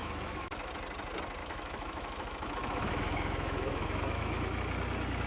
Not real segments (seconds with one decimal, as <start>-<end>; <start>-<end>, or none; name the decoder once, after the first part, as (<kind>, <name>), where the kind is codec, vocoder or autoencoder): 0.0-0.7 (autoencoder, DAC-VAE); 1.4-4.6